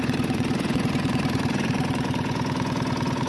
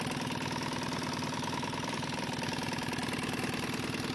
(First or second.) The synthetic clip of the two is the first